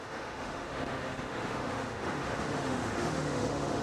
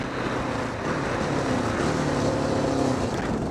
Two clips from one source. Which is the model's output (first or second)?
first